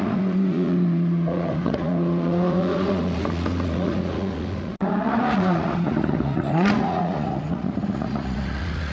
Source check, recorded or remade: remade